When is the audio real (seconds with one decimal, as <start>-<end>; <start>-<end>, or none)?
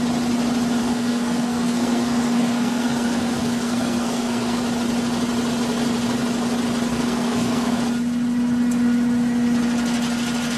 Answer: 0.0-0.8; 4.6-6.9; 7.8-10.6